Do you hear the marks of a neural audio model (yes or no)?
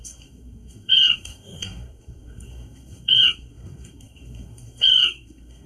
yes